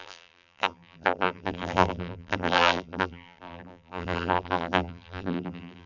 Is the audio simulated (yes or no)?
yes